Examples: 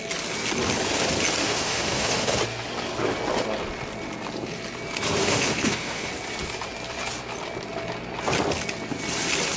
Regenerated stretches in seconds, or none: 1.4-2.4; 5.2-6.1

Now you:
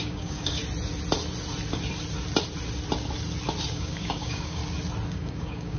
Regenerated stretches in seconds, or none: 0.0-0.6; 3.7-4.6; 5.1-5.8

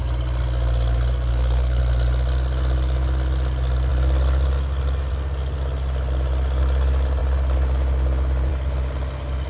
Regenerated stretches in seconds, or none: 1.3-1.8

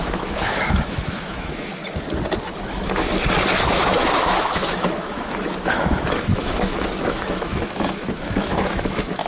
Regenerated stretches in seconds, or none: 0.0-1.7; 3.7-9.3

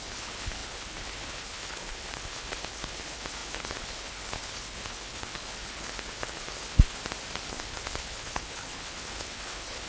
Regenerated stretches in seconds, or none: 0.0-7.0; 7.5-9.9

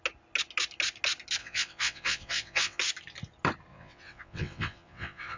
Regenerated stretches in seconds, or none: 1.4-2.8; 3.7-5.4

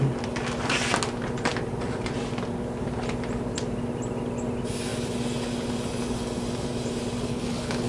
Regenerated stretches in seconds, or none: 7.3-7.9